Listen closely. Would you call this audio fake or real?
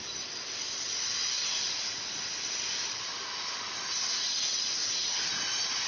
real